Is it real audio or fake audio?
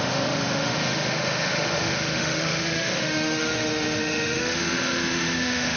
fake